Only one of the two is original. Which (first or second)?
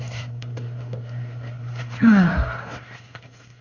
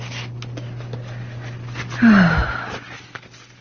second